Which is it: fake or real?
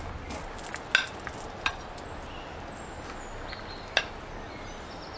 real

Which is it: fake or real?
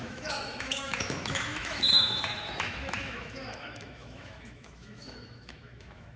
fake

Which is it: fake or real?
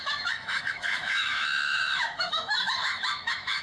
fake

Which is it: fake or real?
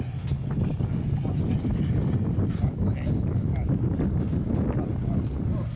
real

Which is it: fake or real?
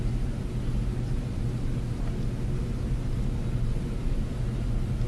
real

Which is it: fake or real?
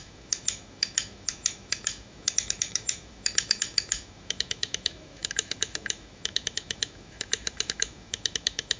fake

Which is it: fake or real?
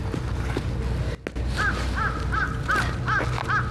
real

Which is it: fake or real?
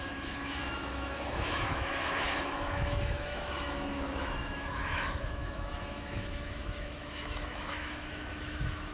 fake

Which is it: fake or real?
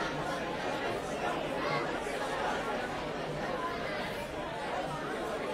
real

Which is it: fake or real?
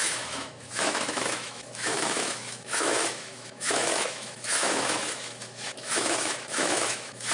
fake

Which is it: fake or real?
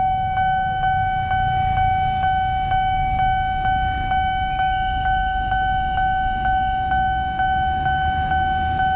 real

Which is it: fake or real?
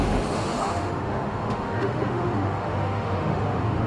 fake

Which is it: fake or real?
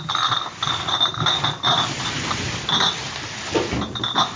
real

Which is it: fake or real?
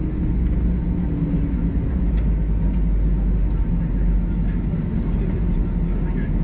real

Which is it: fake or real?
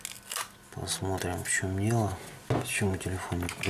real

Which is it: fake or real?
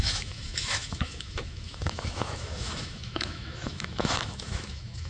fake